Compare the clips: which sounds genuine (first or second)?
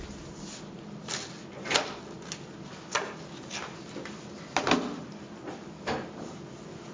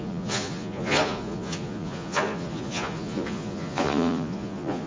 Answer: first